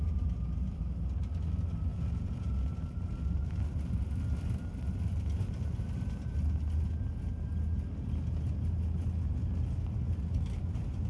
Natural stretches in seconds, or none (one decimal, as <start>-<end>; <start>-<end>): 0.0-1.9; 2.7-11.1